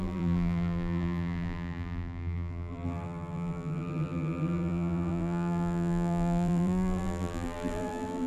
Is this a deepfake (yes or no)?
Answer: yes